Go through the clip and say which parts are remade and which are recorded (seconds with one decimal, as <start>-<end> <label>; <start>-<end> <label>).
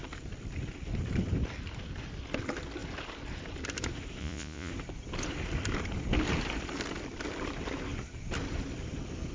0.0-4.2 recorded; 4.2-4.7 remade; 4.7-9.3 recorded